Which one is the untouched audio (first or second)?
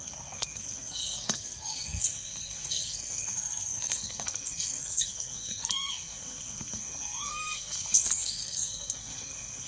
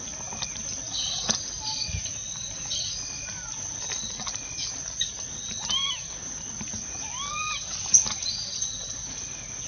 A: second